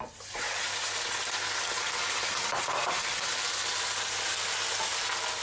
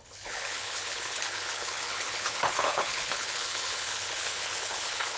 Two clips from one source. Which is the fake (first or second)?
second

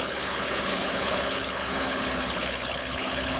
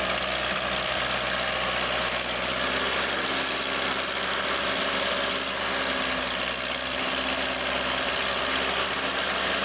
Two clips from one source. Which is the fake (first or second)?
first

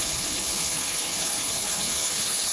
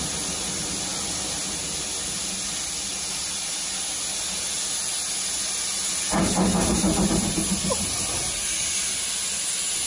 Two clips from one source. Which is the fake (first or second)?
first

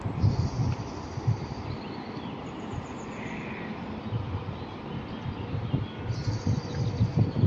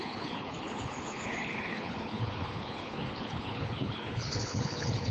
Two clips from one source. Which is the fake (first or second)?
second